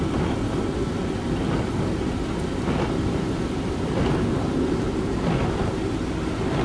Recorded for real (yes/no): yes